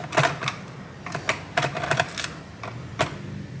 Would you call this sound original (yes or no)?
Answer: yes